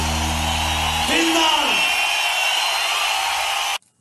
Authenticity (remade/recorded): recorded